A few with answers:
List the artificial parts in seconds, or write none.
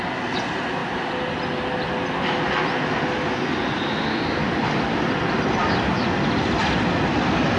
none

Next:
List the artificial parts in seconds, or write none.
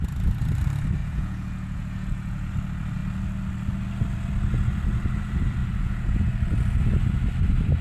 1.0-2.5 (vocoder, Vocos); 5.6-6.3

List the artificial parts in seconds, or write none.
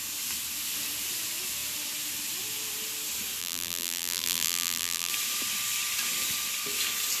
3.4-5.1 (vocoder, BigVGAN v2)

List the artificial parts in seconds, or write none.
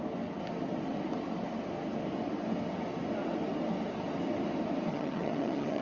4.9-5.8 (vocoder, HiFi-GAN)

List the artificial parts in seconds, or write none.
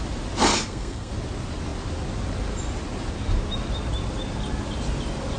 0.5-1.1 (codec, SNAC)